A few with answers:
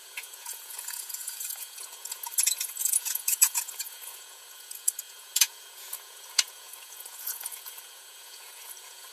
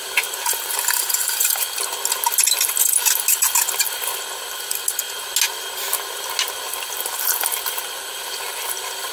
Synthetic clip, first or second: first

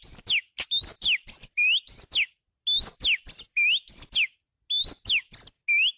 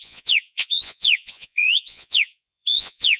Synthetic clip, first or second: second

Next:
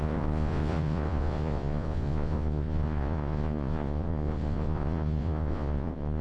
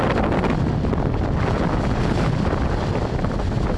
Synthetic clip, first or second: first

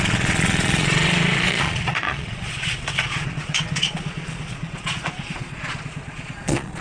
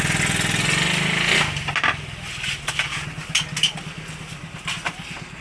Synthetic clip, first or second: first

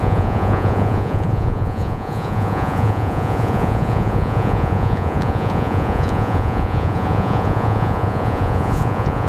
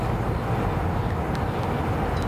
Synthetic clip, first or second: first